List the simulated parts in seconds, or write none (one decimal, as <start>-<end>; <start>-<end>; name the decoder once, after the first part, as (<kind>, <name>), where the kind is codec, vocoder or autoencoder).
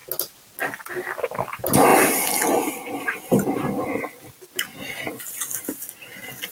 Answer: none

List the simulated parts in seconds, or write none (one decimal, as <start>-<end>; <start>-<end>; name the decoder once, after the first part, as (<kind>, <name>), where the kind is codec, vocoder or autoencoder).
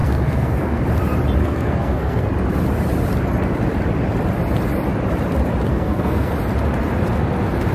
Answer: 0.0-0.8 (codec, SNAC); 1.4-2.3; 5.7-6.3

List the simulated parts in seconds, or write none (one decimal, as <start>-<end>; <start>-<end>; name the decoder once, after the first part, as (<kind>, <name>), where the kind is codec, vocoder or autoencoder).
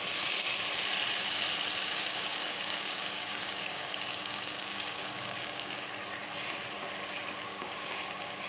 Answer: 1.8-5.9 (codec, DAC); 7.5-8.5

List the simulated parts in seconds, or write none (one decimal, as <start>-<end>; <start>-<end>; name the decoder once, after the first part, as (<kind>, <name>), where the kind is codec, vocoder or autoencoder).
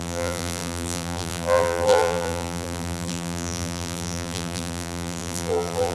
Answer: 0.0-5.9 (vocoder, BigVGAN v2)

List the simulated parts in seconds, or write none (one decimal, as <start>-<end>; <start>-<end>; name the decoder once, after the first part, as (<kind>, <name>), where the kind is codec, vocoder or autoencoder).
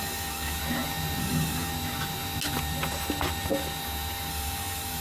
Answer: 0.0-0.6 (codec, DAC); 1.2-1.7; 4.3-5.0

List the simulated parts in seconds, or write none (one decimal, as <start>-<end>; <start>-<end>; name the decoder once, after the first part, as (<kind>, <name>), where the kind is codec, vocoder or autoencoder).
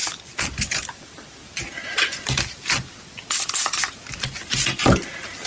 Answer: none